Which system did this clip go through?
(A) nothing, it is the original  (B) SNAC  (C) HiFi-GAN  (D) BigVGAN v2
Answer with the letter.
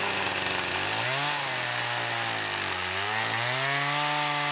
A